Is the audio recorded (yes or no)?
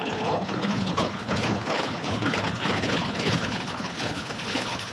no